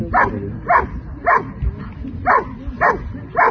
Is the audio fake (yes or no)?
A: no